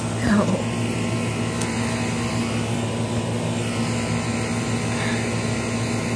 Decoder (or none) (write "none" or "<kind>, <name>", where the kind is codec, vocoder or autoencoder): none